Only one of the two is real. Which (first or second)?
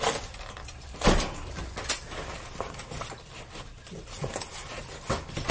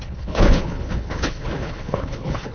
first